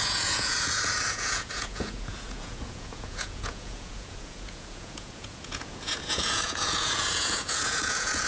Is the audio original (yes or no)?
no